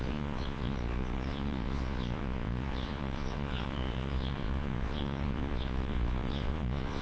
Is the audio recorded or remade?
remade